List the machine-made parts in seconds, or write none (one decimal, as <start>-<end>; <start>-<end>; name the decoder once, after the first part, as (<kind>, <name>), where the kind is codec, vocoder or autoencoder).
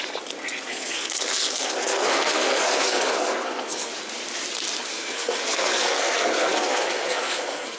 0.7-3.9 (codec, SNAC); 4.9-7.8